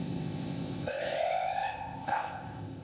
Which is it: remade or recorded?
remade